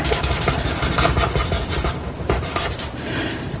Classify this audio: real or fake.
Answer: fake